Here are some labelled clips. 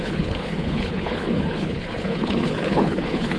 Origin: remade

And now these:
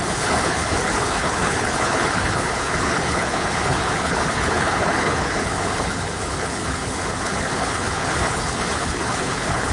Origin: remade